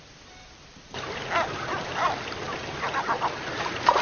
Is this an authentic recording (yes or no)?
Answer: yes